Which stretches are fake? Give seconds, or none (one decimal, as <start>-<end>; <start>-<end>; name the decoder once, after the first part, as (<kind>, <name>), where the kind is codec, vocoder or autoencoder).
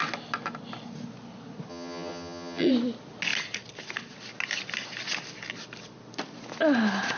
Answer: 1.7-2.7 (vocoder, HiFi-GAN)